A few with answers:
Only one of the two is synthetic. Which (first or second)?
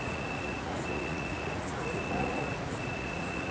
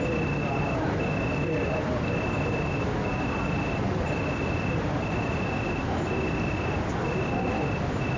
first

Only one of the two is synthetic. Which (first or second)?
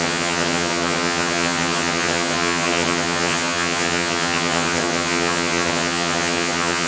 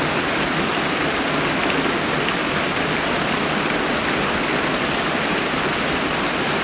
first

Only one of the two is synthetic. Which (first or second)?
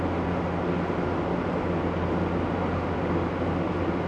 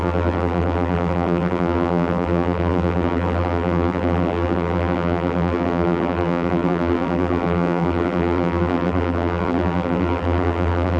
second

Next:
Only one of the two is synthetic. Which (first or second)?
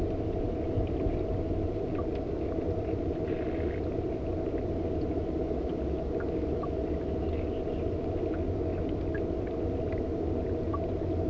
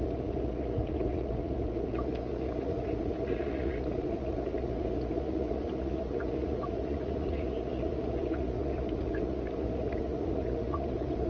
second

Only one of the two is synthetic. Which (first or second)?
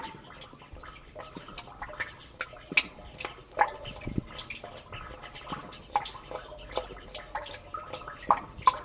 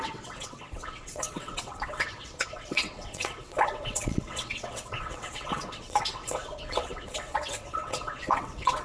second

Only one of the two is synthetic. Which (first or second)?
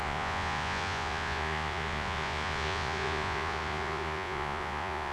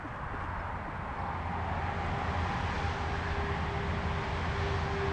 first